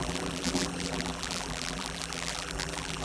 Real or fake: fake